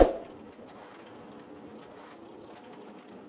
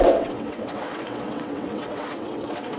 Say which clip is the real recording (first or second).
first